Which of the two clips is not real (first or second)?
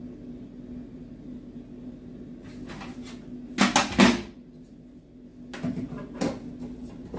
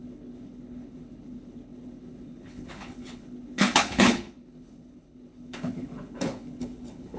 second